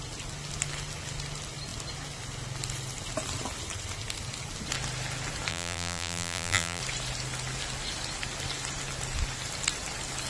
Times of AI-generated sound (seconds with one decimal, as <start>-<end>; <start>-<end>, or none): 5.5-6.8

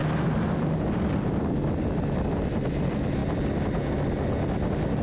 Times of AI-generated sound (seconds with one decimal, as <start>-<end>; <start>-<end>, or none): none

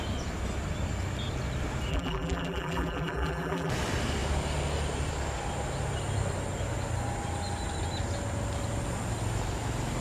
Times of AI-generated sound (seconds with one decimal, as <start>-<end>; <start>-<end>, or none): 1.9-3.7

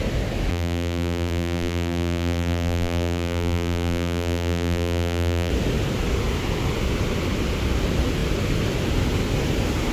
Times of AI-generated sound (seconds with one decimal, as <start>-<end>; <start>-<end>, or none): 0.5-5.5